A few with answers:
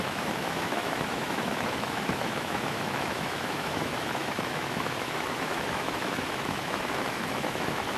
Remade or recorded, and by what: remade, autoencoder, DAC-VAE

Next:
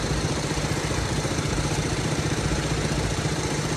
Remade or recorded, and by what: remade, vocoder, BigVGAN v2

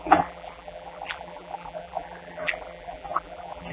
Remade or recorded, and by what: remade, vocoder, BigVGAN v2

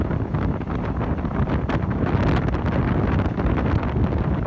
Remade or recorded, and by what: recorded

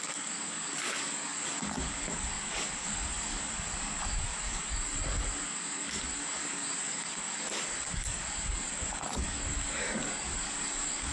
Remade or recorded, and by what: remade, codec, DAC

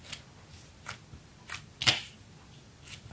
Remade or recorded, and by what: recorded